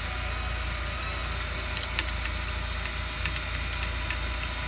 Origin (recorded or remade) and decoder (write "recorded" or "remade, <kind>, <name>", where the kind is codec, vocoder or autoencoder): recorded